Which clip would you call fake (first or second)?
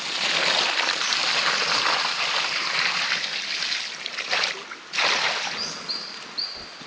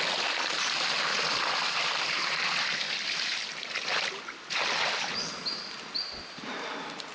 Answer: second